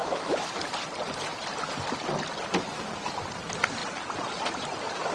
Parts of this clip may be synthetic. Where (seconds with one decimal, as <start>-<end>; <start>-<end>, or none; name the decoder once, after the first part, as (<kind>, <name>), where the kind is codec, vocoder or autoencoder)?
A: 0.0-0.5 (autoencoder, DAC-VAE)